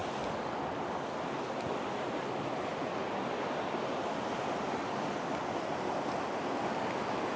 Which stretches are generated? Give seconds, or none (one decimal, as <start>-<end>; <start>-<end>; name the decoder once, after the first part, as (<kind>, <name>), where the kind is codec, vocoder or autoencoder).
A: none

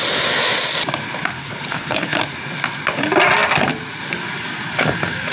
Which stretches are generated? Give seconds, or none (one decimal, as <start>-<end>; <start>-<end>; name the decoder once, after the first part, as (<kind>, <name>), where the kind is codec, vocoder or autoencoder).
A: 1.4-2.2 (codec, HILCodec)